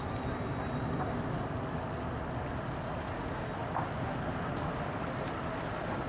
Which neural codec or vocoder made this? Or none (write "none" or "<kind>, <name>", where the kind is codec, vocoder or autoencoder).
none